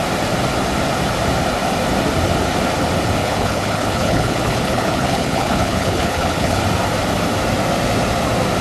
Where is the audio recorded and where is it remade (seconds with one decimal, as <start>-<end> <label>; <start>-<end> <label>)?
0.0-3.2 recorded; 3.2-6.6 remade; 6.6-8.6 recorded